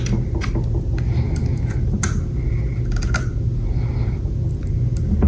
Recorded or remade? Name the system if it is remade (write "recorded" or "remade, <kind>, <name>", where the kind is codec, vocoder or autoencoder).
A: recorded